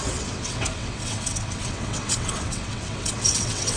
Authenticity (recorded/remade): remade